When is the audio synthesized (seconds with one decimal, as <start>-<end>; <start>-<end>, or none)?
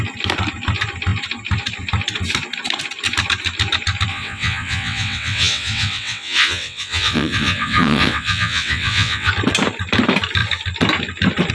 4.1-9.3